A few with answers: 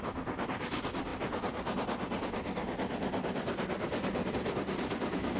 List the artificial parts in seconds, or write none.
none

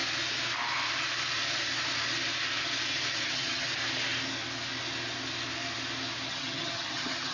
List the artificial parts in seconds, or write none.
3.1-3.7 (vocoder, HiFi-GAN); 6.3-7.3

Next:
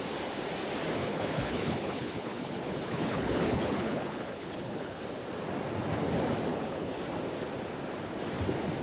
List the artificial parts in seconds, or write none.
1.0-5.0 (codec, HILCodec); 6.5-7.0

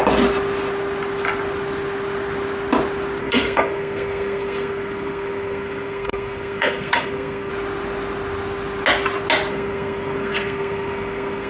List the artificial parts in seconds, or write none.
3.2-7.5 (codec, SNAC); 9.5-11.5

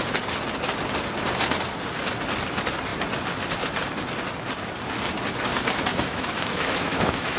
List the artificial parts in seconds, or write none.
5.9-7.4 (autoencoder, DAC-VAE)